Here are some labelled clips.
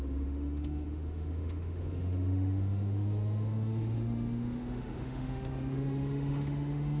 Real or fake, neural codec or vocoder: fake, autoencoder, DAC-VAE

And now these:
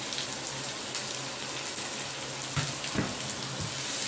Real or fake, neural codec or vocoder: real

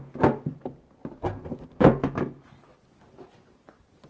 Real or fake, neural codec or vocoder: real